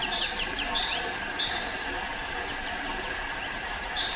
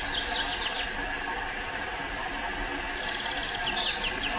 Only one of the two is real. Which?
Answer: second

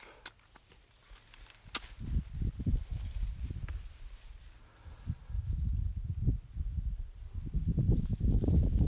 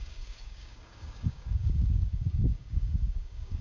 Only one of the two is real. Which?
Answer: first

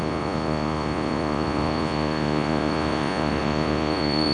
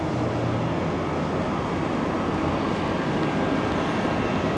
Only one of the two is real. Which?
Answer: second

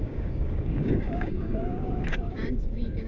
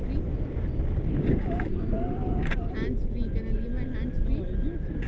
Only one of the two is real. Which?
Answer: second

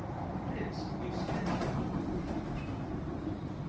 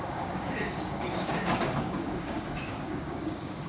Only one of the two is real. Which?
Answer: first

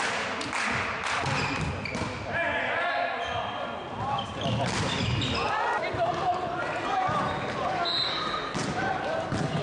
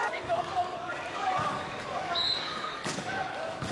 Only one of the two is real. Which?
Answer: first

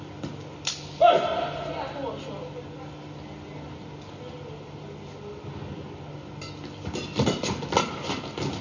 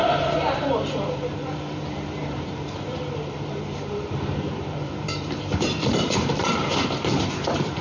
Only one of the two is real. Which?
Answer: first